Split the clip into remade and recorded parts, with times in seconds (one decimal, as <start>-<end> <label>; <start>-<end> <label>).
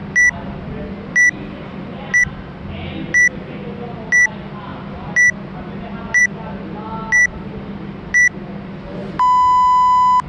0.0-10.3 recorded